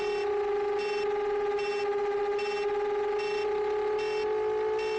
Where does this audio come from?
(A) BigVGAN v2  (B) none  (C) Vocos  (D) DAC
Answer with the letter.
B